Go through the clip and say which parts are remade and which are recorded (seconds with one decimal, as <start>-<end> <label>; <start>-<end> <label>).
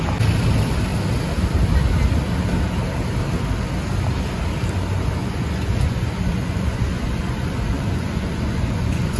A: 0.0-5.2 recorded; 5.2-9.2 remade